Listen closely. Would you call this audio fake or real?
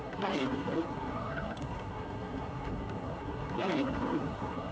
fake